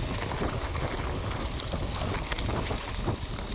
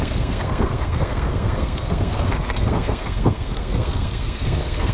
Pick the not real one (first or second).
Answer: second